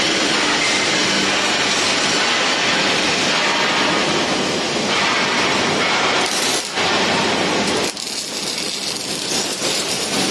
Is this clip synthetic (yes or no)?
no